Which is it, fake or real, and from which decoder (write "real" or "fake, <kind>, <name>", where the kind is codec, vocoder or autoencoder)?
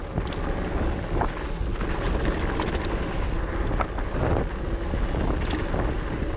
real